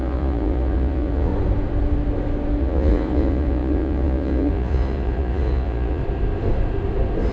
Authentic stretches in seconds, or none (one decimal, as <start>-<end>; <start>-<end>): 1.3-2.6; 6.0-7.3